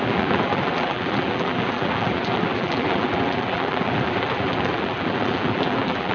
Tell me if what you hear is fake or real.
fake